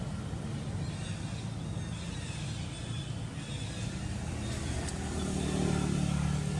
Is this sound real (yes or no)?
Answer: yes